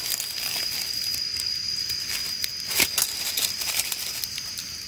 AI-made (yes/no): no